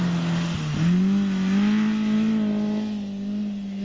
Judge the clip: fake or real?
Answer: real